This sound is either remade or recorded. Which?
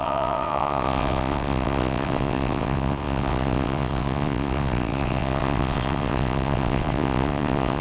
remade